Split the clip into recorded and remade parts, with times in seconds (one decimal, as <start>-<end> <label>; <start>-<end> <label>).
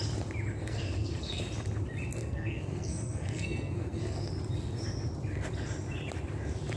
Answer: 0.0-0.6 recorded; 0.6-1.4 remade; 1.4-2.2 recorded; 2.2-4.3 remade; 4.3-6.8 recorded